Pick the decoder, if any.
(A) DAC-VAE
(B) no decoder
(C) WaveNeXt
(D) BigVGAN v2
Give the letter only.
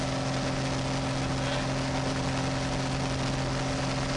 B